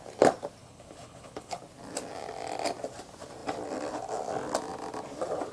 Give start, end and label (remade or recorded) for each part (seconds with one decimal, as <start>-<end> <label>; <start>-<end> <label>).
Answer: 0.0-0.6 recorded; 0.6-1.6 remade; 1.6-5.5 recorded